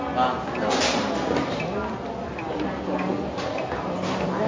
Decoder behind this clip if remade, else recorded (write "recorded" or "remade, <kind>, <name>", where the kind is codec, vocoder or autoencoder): recorded